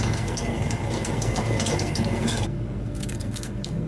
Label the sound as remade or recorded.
remade